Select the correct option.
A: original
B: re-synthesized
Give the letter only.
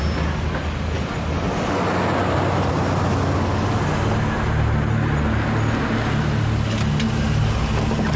A